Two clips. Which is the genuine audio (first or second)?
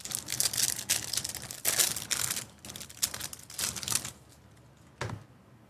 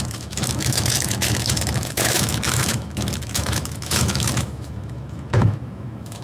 first